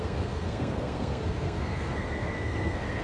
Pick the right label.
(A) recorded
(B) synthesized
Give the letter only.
B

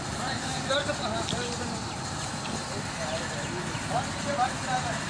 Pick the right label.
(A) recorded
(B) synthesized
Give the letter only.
A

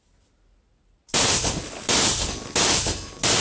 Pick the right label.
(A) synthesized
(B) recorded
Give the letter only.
B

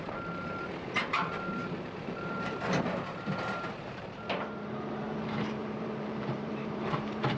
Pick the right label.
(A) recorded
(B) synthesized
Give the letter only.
B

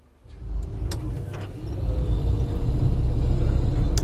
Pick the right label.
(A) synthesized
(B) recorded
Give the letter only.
B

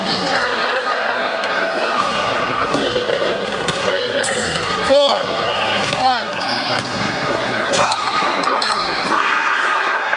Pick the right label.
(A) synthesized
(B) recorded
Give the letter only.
A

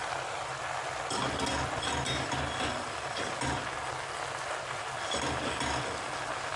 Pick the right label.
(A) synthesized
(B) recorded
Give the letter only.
B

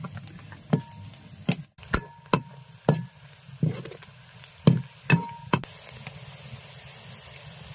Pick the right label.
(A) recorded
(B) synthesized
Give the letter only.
A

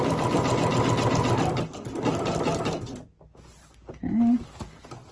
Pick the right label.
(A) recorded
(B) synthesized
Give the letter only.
A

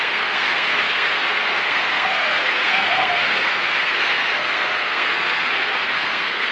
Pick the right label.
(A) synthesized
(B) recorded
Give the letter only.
A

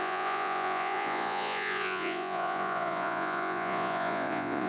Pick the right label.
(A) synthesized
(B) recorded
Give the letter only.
A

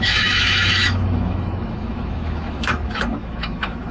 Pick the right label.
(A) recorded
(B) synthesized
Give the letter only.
B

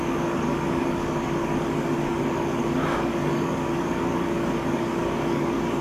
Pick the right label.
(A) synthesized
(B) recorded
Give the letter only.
A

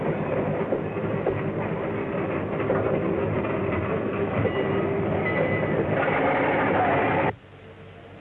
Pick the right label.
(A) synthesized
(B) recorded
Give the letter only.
B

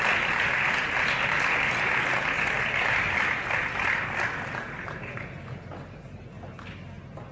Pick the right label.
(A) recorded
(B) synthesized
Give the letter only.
A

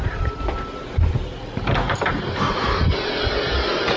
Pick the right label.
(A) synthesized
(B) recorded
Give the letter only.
B